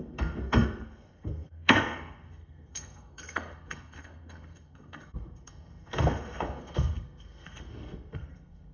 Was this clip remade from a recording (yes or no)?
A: yes